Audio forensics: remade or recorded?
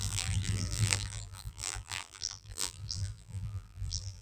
remade